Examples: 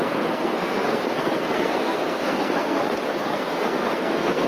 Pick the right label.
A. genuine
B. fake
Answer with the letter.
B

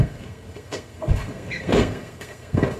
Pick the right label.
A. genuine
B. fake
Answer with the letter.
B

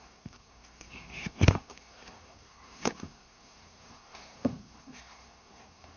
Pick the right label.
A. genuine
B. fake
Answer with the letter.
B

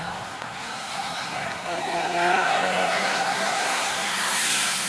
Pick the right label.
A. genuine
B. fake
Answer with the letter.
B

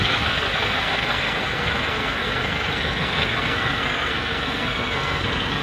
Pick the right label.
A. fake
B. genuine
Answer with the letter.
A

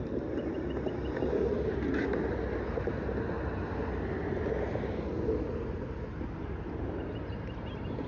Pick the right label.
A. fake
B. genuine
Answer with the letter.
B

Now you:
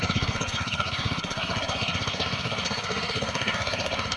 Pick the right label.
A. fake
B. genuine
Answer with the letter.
A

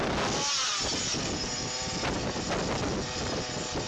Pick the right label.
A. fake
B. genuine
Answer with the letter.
B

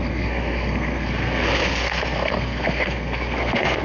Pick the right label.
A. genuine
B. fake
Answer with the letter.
B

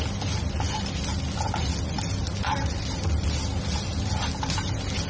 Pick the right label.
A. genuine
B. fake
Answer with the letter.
A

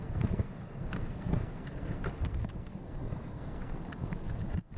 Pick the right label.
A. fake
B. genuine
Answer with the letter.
A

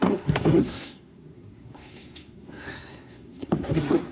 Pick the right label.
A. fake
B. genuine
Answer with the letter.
A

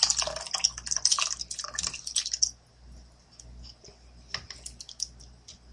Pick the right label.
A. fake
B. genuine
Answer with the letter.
B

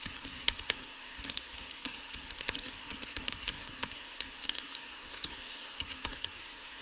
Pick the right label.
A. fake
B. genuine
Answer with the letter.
A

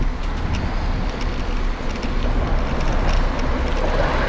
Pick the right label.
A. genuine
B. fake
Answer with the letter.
A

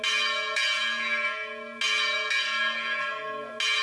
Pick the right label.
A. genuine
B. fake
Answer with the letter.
A